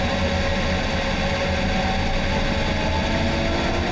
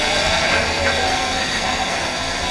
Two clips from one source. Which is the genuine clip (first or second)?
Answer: first